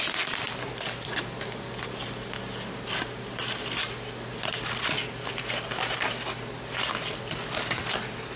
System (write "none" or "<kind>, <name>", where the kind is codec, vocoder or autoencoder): none